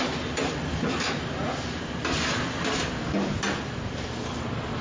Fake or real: real